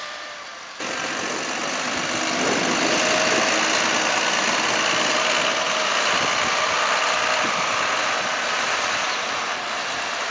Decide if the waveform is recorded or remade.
recorded